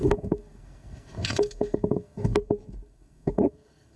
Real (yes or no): no